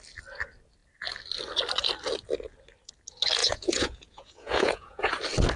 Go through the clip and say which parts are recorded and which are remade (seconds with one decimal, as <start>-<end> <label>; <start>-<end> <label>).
0.0-3.4 recorded; 3.4-5.1 remade; 5.1-5.6 recorded